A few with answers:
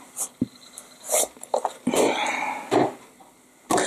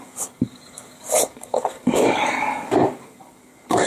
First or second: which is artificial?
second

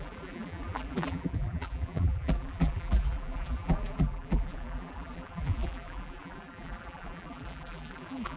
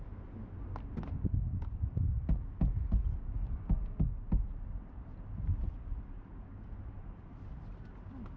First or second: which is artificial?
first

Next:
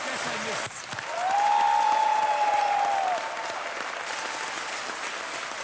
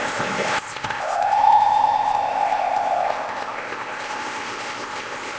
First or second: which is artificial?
second